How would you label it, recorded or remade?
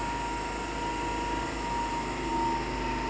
recorded